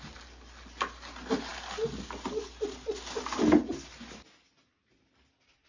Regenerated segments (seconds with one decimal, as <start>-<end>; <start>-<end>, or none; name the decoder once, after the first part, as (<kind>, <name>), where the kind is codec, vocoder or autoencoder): none